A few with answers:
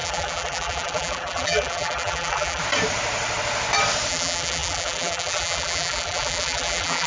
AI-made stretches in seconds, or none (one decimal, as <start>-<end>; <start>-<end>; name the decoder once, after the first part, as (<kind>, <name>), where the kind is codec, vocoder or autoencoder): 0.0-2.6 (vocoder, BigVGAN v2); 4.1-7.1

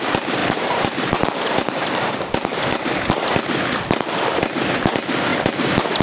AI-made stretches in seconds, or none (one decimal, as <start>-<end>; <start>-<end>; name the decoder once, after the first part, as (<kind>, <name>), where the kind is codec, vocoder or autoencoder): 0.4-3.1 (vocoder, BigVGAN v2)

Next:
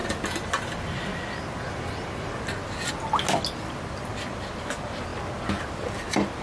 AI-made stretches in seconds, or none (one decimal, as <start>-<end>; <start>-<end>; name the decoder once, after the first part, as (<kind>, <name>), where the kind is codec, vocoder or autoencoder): none